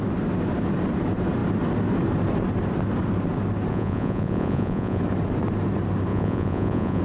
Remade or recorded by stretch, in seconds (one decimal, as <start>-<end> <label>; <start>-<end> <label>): 0.0-3.7 recorded; 3.7-5.0 remade; 5.0-6.1 recorded; 6.1-7.0 remade